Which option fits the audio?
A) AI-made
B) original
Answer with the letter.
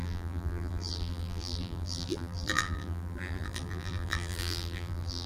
A